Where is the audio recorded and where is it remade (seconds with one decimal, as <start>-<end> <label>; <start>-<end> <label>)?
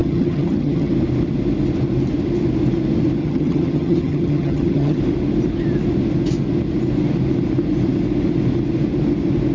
0.0-0.9 remade; 0.9-3.2 recorded; 3.2-5.0 remade; 5.0-9.5 recorded